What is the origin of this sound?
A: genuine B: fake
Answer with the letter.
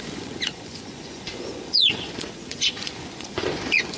B